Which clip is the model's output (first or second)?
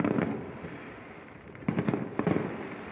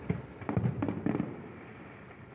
second